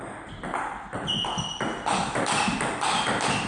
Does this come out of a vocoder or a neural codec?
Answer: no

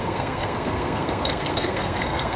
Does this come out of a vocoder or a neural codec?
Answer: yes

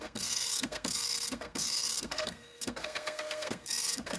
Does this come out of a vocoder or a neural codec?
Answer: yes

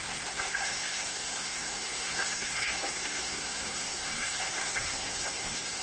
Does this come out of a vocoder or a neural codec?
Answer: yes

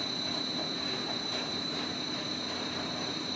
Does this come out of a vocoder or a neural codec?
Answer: no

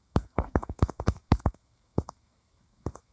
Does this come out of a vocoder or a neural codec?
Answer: yes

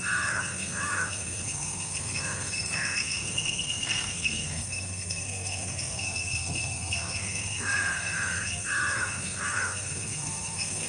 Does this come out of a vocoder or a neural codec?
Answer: yes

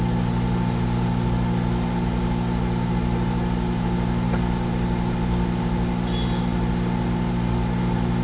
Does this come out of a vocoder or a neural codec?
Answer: no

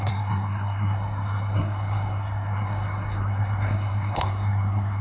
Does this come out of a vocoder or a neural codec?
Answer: yes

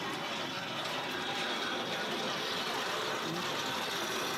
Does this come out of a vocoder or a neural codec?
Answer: no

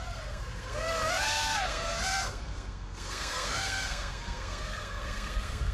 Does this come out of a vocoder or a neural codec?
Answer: yes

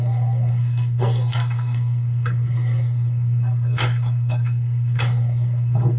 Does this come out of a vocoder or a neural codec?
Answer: yes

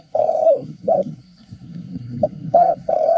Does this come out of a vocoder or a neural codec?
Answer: yes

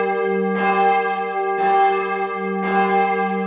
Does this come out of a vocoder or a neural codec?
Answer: no